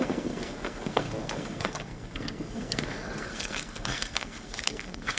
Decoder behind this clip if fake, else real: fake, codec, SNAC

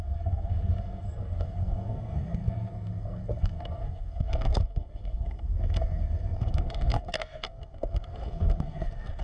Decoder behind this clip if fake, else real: fake, codec, SNAC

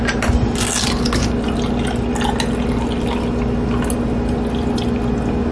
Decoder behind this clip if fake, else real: real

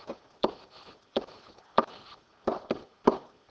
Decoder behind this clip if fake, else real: fake, vocoder, BigVGAN v2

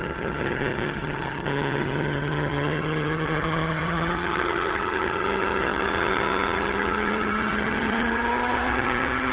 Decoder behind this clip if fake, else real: fake, vocoder, HiFi-GAN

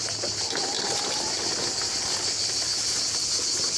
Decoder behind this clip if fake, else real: real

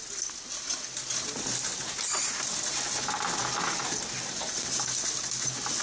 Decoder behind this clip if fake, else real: real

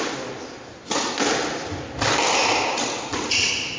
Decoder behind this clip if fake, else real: real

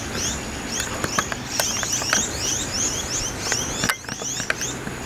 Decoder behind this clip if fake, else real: real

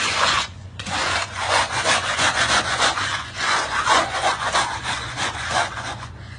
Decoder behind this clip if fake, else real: fake, vocoder, Vocos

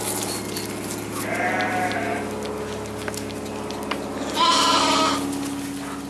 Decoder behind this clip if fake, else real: real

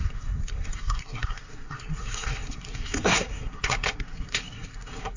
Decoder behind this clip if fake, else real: fake, codec, SNAC